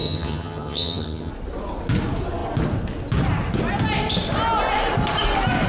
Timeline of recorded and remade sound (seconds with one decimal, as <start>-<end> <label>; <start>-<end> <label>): 0.0-1.3 remade; 1.3-5.7 recorded